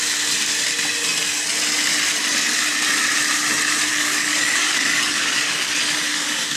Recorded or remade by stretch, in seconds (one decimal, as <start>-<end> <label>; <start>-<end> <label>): 0.0-3.9 recorded; 3.9-6.6 remade